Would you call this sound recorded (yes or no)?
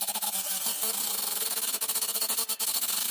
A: no